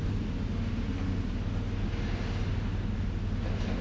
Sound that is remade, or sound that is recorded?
recorded